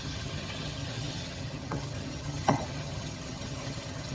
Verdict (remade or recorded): remade